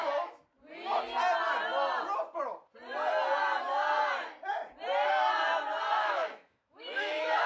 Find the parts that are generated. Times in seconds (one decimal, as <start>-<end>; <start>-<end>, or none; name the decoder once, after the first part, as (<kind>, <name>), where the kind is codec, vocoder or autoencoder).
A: 6.0-7.5 (autoencoder, DAC-VAE)